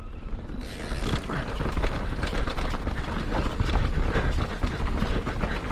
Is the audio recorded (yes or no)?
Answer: yes